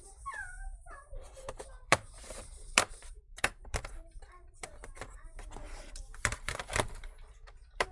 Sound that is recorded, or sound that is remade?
remade